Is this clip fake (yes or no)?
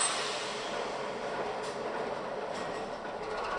no